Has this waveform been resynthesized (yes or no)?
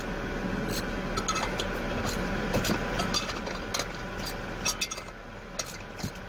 no